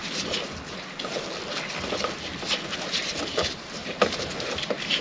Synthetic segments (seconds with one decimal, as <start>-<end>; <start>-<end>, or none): 3.0-5.0